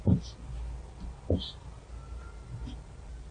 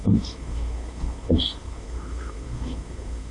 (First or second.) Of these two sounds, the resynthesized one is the second